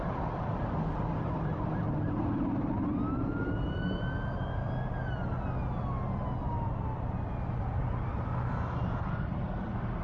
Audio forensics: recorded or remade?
recorded